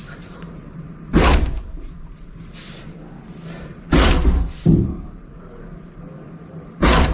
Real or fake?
fake